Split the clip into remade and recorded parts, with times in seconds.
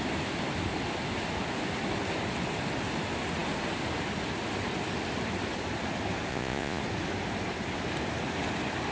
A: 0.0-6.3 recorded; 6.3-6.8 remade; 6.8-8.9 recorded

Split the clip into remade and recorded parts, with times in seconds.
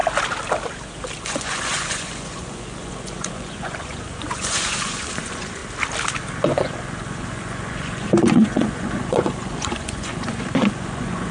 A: 0.0-1.2 recorded; 1.2-5.6 remade; 5.6-6.4 recorded; 6.4-11.3 remade